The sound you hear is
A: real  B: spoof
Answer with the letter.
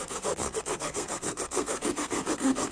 B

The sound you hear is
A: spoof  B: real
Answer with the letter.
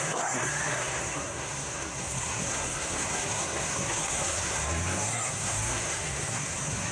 A